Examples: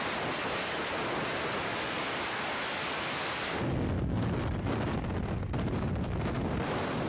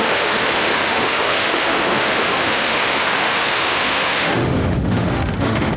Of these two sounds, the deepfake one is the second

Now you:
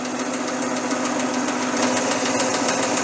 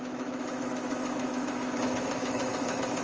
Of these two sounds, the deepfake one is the second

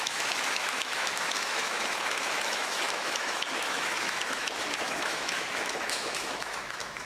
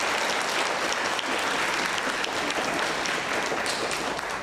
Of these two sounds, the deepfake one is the first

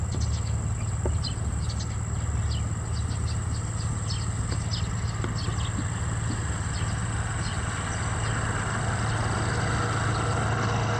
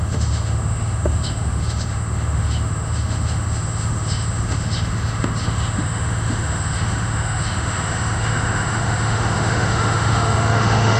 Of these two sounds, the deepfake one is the second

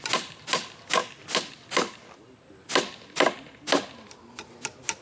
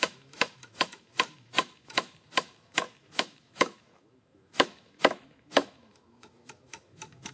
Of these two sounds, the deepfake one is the second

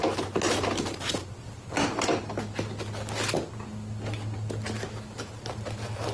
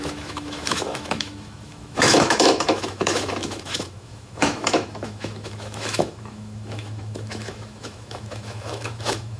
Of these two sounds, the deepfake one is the second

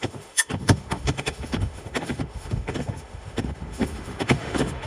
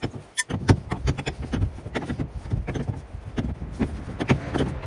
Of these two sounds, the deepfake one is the first